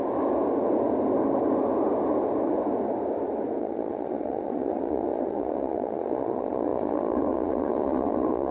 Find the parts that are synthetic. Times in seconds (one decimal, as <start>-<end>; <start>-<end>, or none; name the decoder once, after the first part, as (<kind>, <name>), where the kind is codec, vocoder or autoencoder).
3.6-8.5 (vocoder, Vocos)